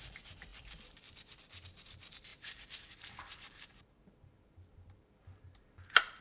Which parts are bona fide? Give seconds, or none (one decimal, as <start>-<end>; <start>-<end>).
0.0-2.3; 5.4-6.2